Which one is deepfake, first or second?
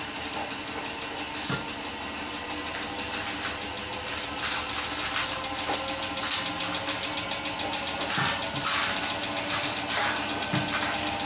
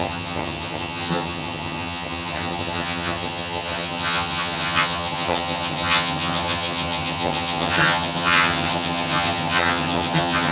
second